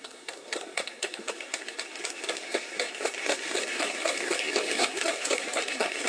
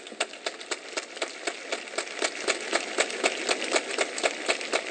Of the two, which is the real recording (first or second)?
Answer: second